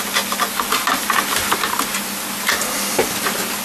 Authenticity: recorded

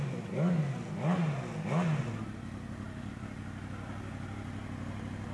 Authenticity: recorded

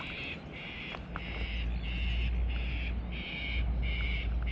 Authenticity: recorded